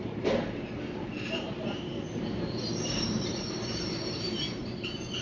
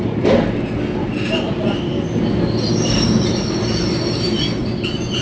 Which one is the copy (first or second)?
first